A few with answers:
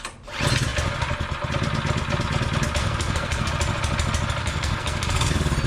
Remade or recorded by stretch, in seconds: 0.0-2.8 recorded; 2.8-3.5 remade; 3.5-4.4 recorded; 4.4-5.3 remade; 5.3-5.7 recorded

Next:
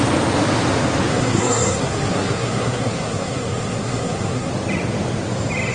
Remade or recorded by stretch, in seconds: 0.0-1.1 recorded; 1.1-4.5 remade; 4.5-5.7 recorded

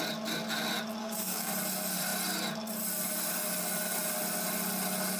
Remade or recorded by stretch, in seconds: 0.0-1.0 recorded; 1.0-1.5 remade; 1.5-5.2 recorded